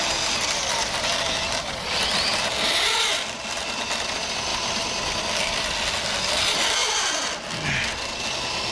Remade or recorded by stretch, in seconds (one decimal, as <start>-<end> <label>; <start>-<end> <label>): 0.0-8.7 recorded